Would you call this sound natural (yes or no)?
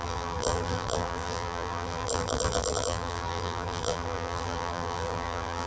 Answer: no